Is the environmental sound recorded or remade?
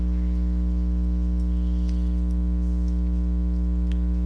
recorded